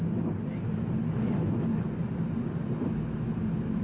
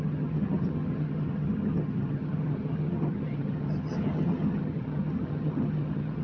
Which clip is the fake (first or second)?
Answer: second